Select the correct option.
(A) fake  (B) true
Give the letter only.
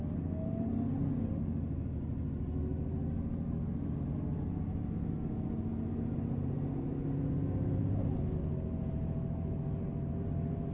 B